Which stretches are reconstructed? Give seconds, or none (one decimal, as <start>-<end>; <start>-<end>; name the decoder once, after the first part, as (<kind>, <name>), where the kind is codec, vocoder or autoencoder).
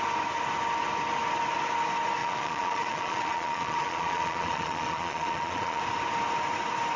2.2-5.8 (vocoder, Vocos)